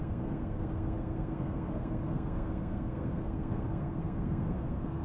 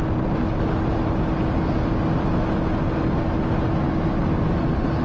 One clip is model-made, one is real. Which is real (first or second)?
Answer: second